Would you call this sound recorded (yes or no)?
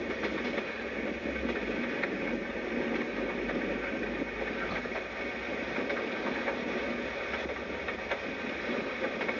yes